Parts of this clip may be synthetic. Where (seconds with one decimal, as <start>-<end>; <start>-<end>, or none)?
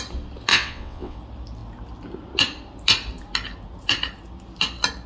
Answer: 0.5-1.2